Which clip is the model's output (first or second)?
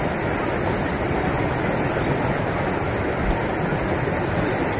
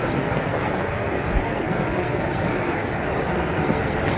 second